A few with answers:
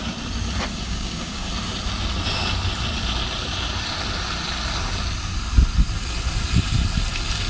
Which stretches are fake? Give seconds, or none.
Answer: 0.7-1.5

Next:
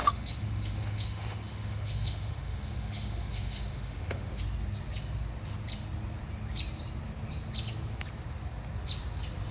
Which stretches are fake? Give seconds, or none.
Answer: 0.0-4.4

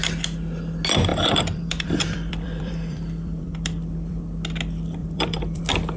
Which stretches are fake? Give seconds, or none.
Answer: 1.1-4.2; 5.0-5.6

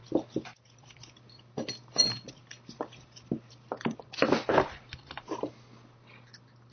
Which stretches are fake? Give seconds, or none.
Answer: none

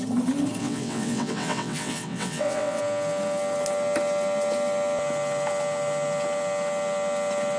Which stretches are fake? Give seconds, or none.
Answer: 0.6-2.8

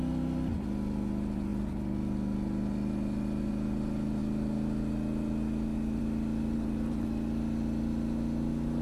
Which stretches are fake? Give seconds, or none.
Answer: none

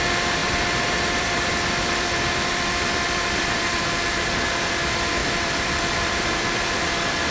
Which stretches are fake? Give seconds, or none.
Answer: 0.4-3.9; 5.2-6.6